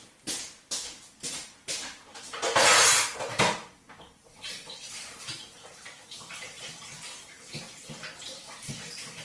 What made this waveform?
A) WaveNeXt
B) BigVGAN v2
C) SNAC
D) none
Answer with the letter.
D